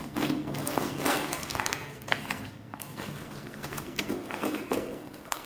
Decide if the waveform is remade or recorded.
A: remade